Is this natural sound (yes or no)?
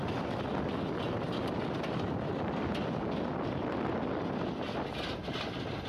yes